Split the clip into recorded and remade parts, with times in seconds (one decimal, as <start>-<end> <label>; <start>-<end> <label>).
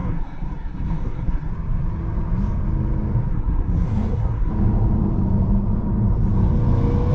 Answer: 0.0-1.5 remade; 1.5-3.3 recorded; 3.3-4.5 remade; 4.5-7.1 recorded